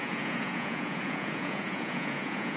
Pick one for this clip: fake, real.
fake